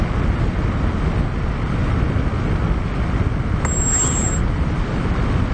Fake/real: real